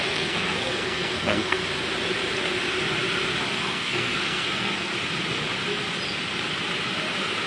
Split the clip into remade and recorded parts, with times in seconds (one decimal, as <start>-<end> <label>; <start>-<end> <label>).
0.0-1.6 remade; 1.6-3.5 recorded; 3.5-4.9 remade; 4.9-7.5 recorded